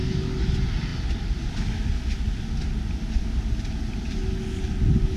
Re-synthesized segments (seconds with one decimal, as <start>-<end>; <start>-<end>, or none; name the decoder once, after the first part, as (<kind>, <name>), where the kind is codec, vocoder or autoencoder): 0.0-0.5 (codec, DAC)